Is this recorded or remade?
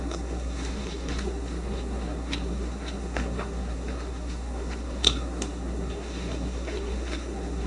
remade